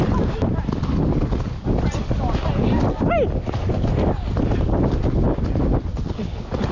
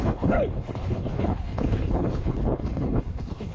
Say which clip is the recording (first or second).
first